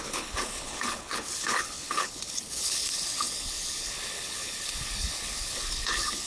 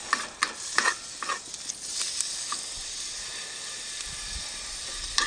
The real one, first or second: second